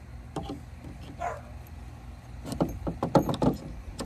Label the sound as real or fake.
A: real